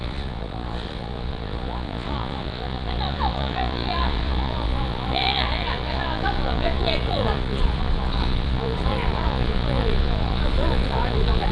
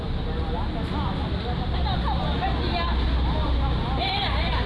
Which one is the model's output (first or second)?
first